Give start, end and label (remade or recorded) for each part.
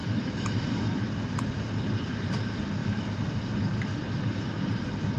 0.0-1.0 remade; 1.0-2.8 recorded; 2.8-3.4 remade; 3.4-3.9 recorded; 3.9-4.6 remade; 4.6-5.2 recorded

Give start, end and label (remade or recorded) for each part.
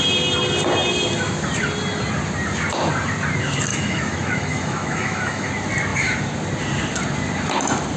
0.0-3.7 recorded; 3.7-5.5 remade; 5.5-8.0 recorded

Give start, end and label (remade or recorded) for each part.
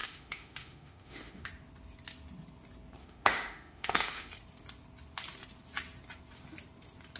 0.0-1.5 remade; 1.5-3.0 recorded; 3.0-4.3 remade; 4.3-7.2 recorded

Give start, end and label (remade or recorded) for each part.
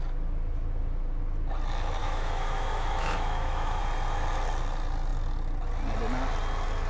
0.0-2.0 recorded; 2.0-3.8 remade; 3.8-6.9 recorded